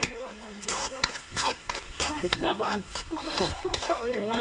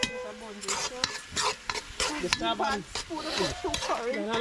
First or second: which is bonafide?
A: second